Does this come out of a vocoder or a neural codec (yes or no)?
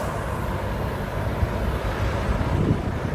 no